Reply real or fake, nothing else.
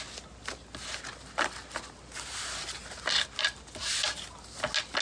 real